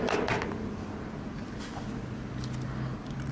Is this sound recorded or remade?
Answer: recorded